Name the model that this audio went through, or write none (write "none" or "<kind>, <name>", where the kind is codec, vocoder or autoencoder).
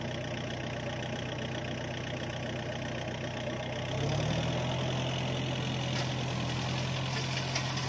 none